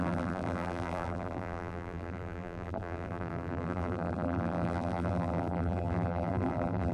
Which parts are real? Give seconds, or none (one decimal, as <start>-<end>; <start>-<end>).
none